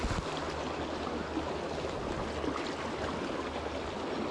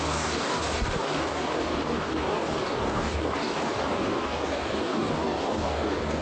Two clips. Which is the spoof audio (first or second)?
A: second